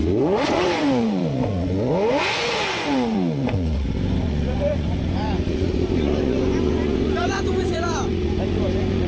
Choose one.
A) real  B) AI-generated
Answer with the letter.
B